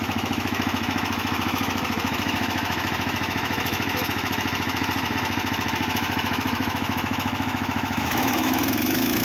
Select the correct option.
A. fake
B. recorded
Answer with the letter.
A